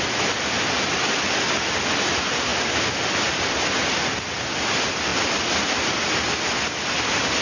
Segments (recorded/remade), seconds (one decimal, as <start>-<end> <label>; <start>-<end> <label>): 0.0-7.4 recorded